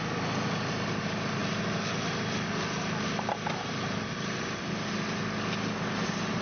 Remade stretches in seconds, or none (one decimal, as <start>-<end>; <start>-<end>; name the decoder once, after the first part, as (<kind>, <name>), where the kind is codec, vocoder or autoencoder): none